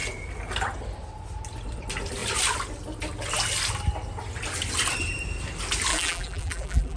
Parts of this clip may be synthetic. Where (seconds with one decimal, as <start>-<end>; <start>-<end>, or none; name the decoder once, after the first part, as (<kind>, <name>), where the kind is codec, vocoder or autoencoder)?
5.9-7.0 (vocoder, BigVGAN v2)

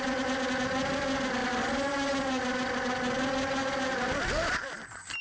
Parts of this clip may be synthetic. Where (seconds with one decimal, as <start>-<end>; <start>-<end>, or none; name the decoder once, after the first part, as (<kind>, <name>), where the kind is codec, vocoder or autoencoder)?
none

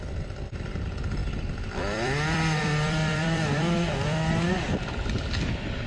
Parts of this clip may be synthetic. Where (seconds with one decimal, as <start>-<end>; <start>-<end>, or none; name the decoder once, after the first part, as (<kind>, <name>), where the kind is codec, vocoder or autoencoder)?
1.2-4.5 (vocoder, BigVGAN v2)

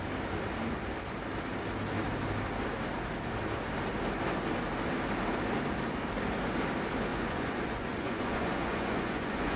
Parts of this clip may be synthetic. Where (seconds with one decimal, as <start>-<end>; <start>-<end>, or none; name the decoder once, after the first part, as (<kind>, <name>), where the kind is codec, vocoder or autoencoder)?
7.1-9.6 (vocoder, Vocos)